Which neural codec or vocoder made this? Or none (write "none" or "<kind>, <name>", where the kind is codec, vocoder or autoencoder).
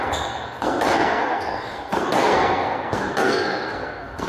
codec, SNAC